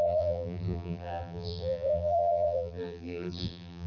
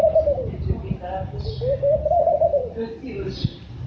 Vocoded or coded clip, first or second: first